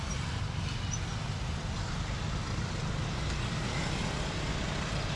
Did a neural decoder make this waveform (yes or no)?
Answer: no